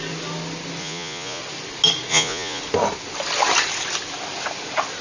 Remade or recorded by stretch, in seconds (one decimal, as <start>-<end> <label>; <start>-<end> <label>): 0.0-0.8 recorded; 0.8-1.4 remade; 1.4-2.1 recorded; 2.1-2.6 remade; 2.6-5.0 recorded